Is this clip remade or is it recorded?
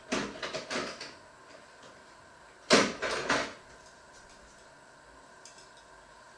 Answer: recorded